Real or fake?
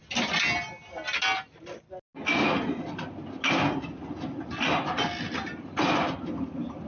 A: real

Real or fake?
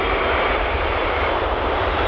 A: real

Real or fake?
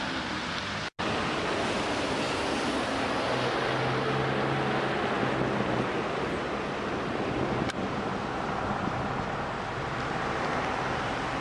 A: real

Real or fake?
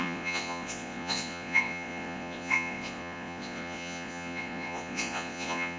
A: fake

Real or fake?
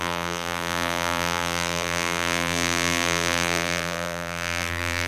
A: fake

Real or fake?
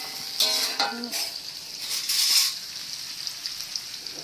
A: real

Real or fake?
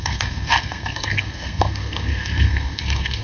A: fake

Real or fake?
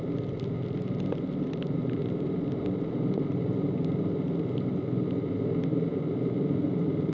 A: real